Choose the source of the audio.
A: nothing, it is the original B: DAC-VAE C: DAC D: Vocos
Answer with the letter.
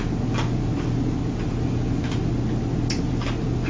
A